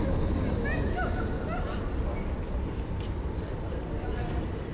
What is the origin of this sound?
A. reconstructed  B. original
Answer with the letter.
B